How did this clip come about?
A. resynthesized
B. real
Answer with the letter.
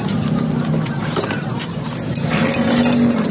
B